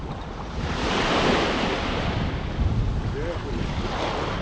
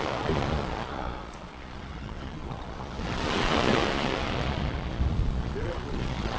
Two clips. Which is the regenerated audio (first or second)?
second